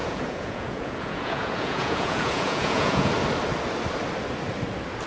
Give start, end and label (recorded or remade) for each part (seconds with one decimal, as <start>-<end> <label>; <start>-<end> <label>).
0.0-3.1 remade; 3.1-5.1 recorded